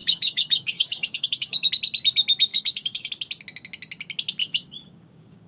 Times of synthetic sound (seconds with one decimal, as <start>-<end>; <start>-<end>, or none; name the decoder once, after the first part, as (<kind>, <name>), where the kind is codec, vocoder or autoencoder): 0.0-1.7 (codec, DAC); 2.5-3.1; 4.4-5.5